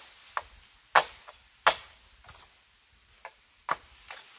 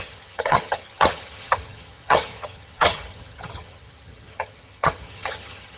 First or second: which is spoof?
second